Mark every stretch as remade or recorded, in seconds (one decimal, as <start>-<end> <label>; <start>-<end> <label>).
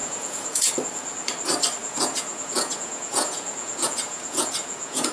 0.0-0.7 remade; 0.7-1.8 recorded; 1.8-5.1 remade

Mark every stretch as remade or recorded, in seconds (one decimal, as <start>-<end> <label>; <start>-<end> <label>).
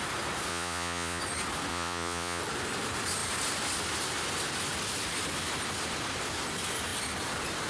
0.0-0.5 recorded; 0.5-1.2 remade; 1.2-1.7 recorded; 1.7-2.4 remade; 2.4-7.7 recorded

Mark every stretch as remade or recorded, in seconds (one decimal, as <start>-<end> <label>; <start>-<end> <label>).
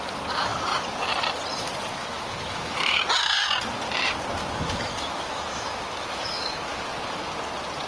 0.0-1.9 recorded; 1.9-3.0 remade; 3.0-4.4 recorded; 4.4-6.6 remade; 6.6-7.9 recorded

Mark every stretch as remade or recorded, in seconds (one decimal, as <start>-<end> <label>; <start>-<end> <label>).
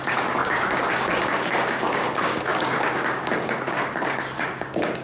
0.0-5.0 remade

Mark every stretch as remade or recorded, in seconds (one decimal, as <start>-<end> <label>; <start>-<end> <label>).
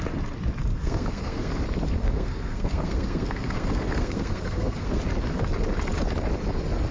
0.0-0.7 recorded; 0.7-1.5 remade; 1.5-2.0 recorded; 2.0-5.0 remade; 5.0-6.9 recorded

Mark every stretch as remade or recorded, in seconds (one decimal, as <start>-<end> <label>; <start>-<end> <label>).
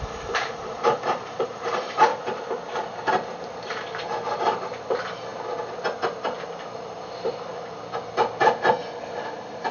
0.0-2.1 remade; 2.1-3.4 recorded; 3.4-5.3 remade; 5.3-9.0 recorded; 9.0-9.7 remade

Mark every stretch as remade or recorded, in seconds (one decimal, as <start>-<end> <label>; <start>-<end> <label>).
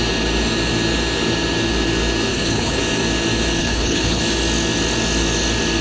0.0-2.3 recorded; 2.3-2.8 remade; 2.8-3.6 recorded; 3.6-4.2 remade; 4.2-5.8 recorded